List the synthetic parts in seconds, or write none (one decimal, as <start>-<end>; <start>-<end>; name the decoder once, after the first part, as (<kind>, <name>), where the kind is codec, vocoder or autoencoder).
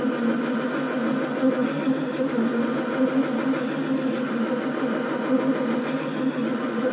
none